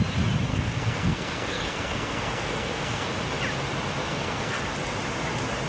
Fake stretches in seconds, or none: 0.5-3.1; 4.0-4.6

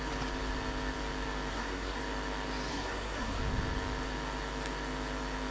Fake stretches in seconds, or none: 1.5-2.0; 2.7-3.4

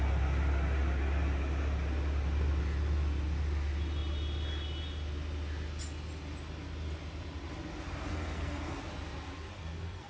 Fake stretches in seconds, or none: 8.1-8.8; 9.5-10.1

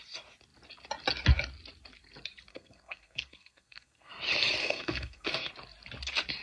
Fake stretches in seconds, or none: 2.5-4.1; 4.6-5.5

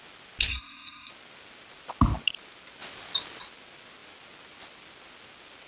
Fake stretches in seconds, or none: 0.5-1.1

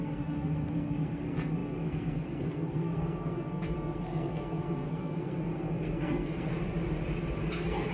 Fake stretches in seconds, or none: 0.0-6.5; 7.4-7.9

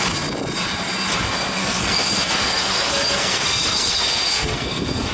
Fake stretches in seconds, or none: 1.6-5.1